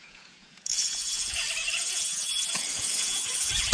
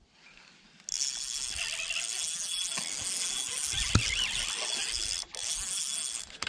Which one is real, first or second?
second